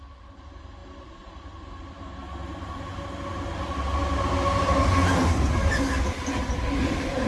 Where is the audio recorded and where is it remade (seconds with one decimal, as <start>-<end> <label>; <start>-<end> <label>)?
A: 0.0-7.3 recorded